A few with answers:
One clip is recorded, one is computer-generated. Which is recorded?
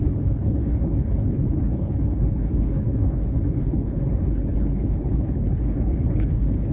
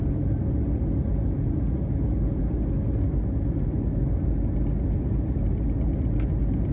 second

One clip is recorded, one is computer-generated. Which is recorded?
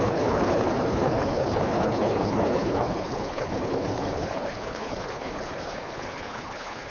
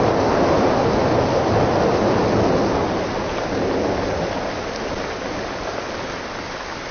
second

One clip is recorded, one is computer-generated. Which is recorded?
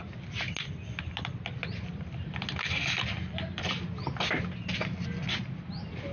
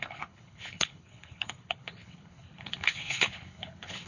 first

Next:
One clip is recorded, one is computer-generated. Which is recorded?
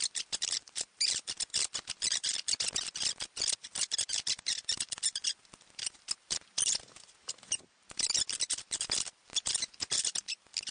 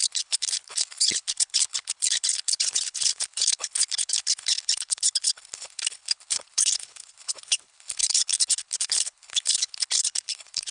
first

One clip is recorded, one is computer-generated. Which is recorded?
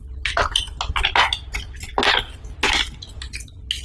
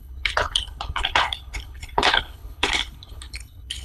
first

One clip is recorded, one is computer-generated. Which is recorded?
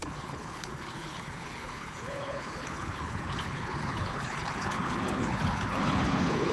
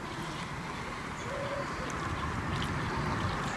second